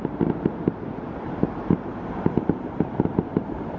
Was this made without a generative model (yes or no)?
no